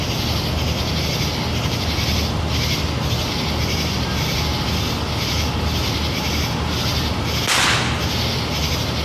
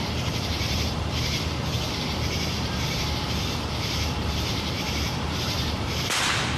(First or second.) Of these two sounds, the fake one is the second